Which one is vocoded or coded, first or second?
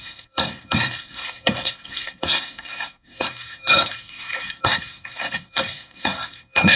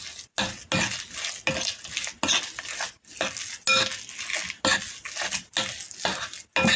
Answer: first